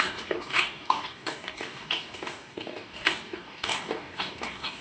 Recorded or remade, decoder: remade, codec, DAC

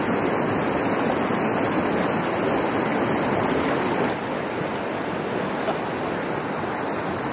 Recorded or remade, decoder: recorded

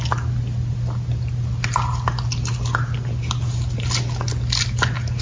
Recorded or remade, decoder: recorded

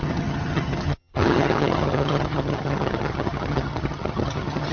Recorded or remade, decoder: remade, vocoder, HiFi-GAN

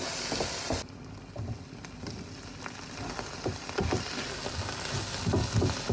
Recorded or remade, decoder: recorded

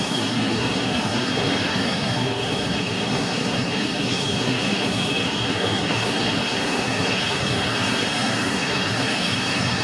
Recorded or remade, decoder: remade, codec, SNAC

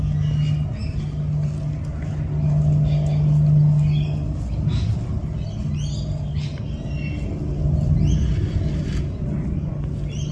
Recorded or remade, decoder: recorded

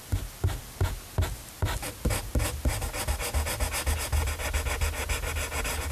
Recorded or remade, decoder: recorded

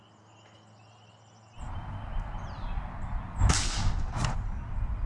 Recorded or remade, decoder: recorded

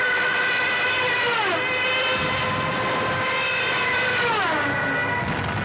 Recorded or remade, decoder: recorded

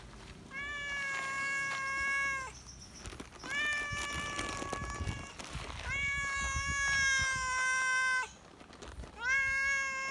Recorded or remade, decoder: recorded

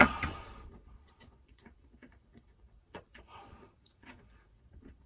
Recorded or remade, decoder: remade, vocoder, Vocos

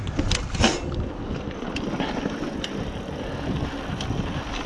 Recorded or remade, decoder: recorded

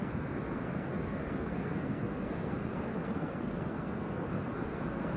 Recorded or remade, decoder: remade, codec, SNAC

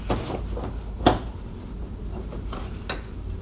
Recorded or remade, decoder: recorded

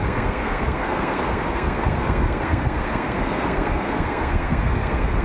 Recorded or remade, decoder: remade, codec, SNAC